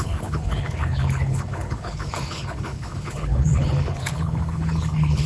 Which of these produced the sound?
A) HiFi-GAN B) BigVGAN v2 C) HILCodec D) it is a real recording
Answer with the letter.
C